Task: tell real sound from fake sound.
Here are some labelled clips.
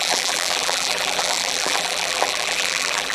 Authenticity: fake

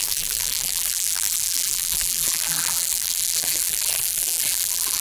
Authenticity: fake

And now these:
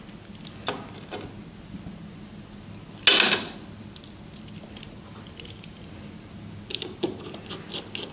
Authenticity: real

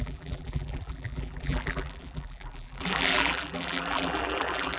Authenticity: fake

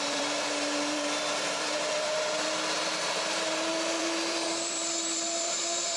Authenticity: fake